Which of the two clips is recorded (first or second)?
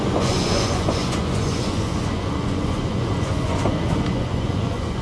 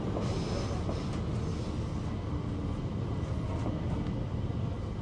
second